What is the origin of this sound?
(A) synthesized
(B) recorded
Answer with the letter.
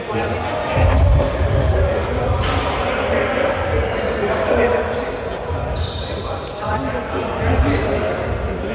B